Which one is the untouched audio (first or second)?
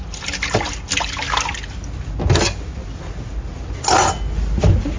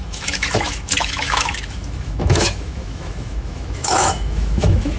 first